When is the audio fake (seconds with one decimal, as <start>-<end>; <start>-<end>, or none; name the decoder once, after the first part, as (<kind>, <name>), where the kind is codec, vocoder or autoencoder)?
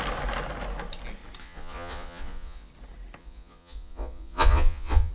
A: 1.4-2.7 (vocoder, Vocos); 3.2-5.1